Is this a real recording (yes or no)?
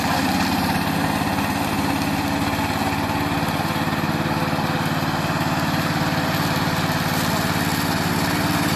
yes